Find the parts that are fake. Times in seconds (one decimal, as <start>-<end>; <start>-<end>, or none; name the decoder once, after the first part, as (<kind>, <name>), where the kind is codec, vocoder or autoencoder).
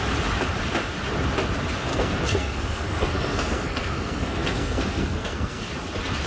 1.9-5.7 (codec, SNAC)